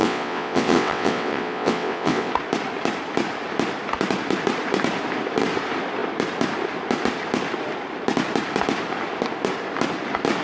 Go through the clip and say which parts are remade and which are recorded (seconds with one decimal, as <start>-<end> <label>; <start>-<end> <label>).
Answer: 0.0-2.3 remade; 2.3-10.4 recorded